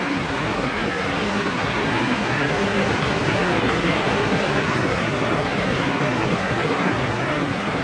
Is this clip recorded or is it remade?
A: remade